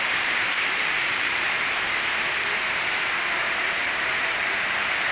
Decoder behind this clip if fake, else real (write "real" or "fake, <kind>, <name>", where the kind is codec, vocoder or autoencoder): fake, vocoder, BigVGAN v2